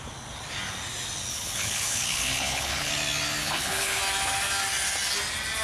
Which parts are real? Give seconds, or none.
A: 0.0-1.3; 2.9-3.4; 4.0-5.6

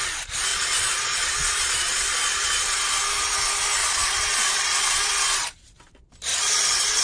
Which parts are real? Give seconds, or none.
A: 0.0-0.5; 2.6-3.8; 5.1-6.3

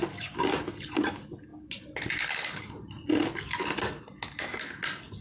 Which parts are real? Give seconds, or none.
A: 0.8-5.2

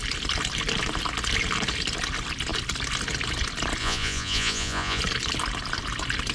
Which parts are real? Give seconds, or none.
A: 0.0-3.8; 5.0-6.3

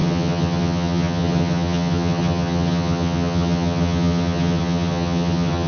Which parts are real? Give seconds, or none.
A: none

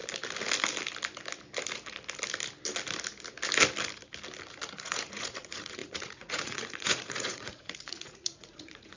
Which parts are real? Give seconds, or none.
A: 0.0-4.7

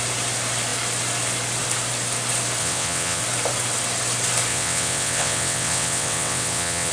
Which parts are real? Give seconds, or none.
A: 0.0-2.6; 3.2-4.5

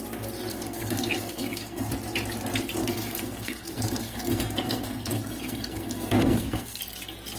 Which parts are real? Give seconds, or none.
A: 0.0-0.5; 1.9-2.8; 6.8-7.4